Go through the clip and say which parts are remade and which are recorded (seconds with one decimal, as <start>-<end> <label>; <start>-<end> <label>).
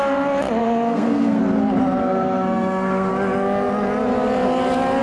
0.0-0.6 recorded; 0.6-1.4 remade; 1.4-2.0 recorded; 2.0-3.1 remade; 3.1-5.0 recorded